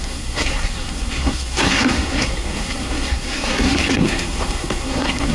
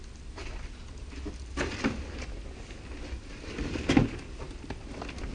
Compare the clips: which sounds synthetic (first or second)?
first